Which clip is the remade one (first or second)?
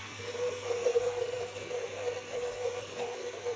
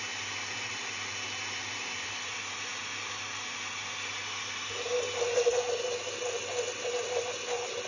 first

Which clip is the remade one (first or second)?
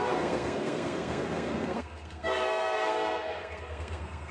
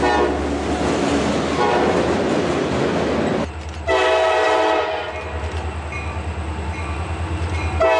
first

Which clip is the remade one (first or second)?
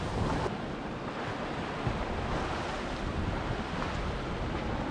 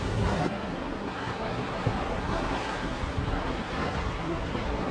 second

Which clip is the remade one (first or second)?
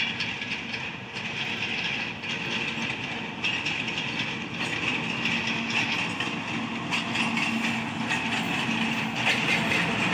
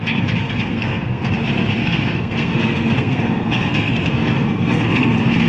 second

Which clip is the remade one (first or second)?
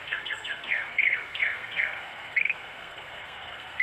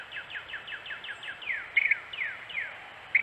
first